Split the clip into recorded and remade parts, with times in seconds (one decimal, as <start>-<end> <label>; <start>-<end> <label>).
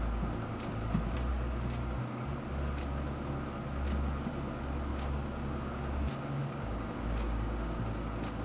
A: 0.0-1.3 recorded; 1.3-2.3 remade; 2.3-4.9 recorded; 4.9-7.8 remade; 7.8-8.4 recorded